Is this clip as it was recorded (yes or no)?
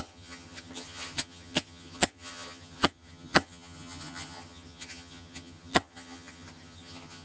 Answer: no